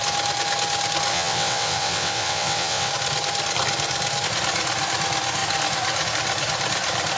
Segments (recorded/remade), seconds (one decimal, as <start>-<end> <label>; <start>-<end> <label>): 0.0-1.1 recorded; 1.1-2.9 remade; 2.9-7.2 recorded